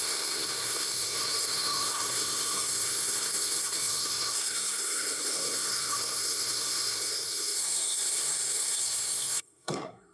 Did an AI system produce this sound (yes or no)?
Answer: yes